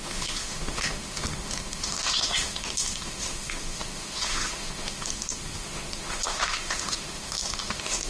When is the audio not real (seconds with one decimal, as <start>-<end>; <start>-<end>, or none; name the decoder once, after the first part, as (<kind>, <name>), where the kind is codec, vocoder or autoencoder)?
0.0-8.1 (autoencoder, DAC-VAE)